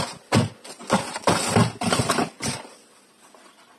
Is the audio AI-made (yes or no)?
no